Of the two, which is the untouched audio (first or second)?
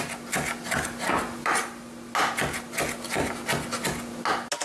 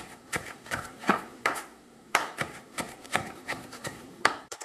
first